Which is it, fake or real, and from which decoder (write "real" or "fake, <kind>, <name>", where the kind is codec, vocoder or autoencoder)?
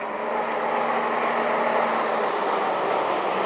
real